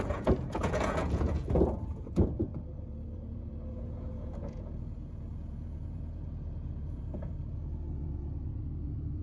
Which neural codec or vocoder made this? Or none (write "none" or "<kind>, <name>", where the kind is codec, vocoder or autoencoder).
vocoder, Vocos